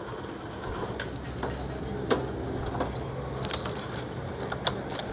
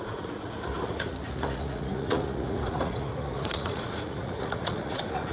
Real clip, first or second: first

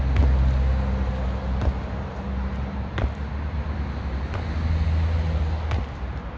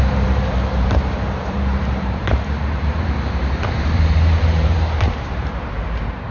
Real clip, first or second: first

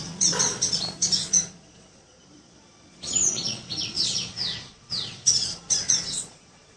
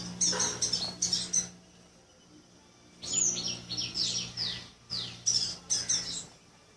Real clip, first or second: second